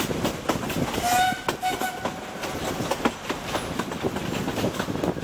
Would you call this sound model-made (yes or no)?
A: no